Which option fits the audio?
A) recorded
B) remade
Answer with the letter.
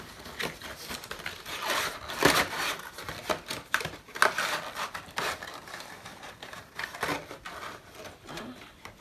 A